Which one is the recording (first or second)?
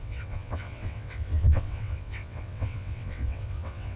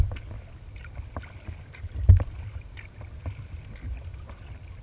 second